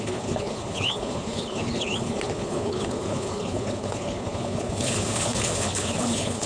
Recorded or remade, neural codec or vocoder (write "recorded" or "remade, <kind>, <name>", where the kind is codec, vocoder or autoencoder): remade, codec, HILCodec